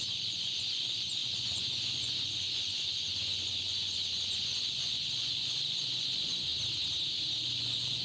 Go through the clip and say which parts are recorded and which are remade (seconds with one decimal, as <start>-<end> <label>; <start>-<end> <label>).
0.0-6.5 remade; 6.5-7.4 recorded; 7.4-8.0 remade